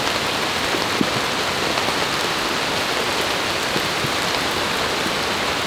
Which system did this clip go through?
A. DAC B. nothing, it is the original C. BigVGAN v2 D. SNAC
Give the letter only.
B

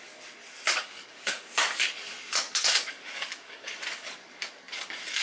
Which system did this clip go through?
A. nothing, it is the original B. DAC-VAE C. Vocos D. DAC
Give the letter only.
D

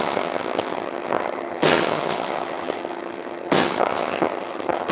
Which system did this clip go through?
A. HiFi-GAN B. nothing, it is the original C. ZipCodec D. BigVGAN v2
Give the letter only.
A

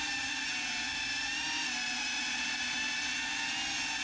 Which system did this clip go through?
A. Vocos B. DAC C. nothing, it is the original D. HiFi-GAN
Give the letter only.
C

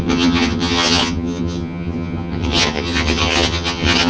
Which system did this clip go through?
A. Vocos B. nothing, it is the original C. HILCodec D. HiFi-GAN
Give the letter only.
D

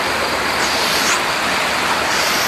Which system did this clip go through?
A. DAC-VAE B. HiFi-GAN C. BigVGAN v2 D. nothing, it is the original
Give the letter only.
D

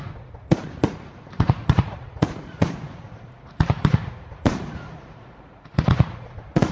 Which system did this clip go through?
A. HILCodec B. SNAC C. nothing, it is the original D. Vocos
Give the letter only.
D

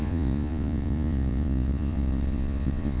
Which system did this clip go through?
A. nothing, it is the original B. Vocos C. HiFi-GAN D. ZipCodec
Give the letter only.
B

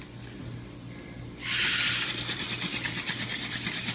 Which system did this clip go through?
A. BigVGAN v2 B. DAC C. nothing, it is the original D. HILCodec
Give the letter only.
C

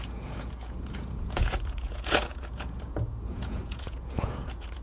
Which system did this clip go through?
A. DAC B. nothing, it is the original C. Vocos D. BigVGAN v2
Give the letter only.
C